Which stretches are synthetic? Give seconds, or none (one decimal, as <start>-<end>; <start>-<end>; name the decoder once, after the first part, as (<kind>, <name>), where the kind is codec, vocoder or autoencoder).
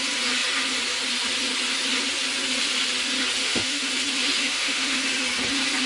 3.4-3.9 (autoencoder, DAC-VAE); 4.4-5.0